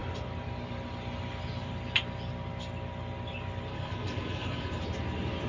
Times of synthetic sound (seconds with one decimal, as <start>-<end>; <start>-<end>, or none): 3.7-4.8